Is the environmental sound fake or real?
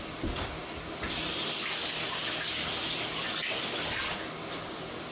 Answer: real